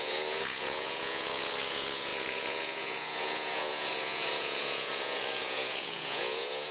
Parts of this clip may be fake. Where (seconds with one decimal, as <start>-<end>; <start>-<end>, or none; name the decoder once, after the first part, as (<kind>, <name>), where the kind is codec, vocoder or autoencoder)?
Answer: 0.0-6.7 (vocoder, Vocos)